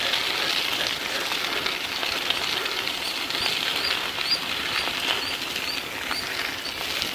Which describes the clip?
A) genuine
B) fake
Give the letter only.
A